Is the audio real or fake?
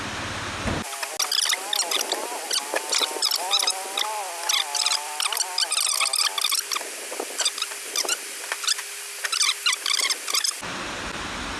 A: real